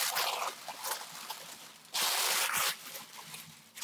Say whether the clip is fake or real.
real